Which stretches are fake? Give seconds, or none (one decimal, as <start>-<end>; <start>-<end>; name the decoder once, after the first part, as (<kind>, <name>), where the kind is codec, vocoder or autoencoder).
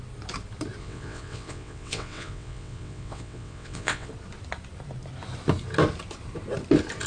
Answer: 0.8-4.1 (vocoder, WaveNeXt)